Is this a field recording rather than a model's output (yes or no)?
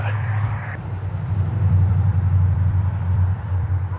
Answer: no